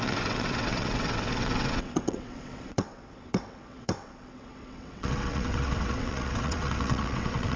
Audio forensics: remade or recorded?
remade